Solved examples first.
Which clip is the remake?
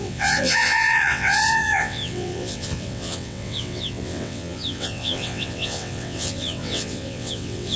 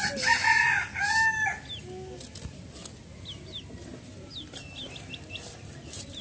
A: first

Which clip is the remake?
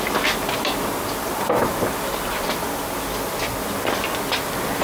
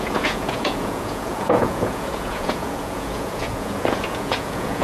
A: second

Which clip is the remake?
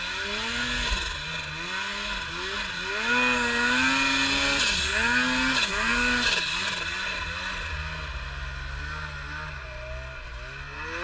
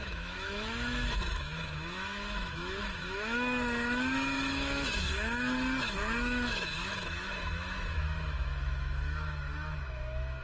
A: second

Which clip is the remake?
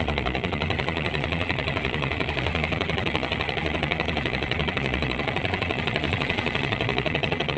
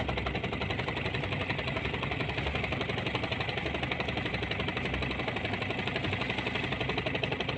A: first